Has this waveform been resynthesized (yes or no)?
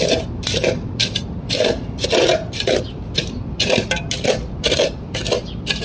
yes